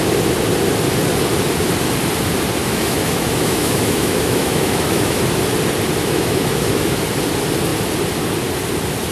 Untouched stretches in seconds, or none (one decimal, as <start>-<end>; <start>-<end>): 0.0-2.6; 5.2-6.0; 7.0-9.1